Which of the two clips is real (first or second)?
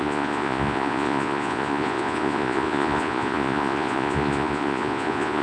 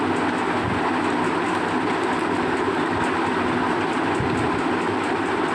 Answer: second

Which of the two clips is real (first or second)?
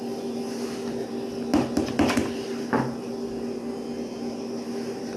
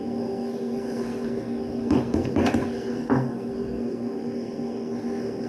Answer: first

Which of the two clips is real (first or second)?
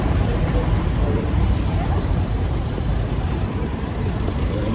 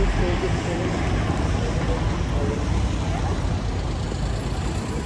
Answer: second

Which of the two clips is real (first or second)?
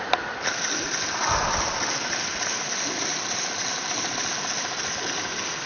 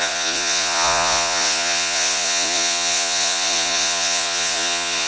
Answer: first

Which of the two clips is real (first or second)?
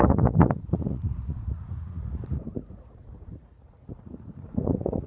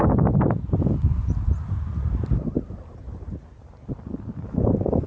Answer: second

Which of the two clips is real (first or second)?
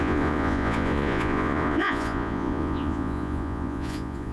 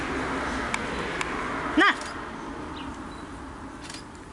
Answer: second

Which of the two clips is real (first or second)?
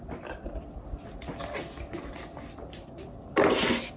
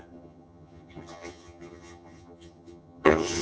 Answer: first